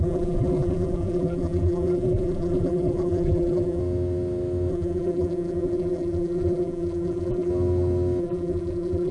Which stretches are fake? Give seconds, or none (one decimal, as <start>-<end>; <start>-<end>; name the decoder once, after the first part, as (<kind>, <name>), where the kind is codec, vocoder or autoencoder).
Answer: 0.0-3.8 (vocoder, BigVGAN v2); 4.7-7.5; 8.2-9.1